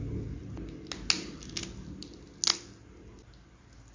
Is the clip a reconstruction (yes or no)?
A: no